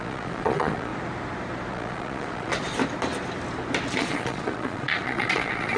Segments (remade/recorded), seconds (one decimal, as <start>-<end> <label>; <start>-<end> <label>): 0.0-0.9 remade; 0.9-1.7 recorded; 1.7-2.5 remade; 2.5-4.0 recorded; 4.0-5.8 remade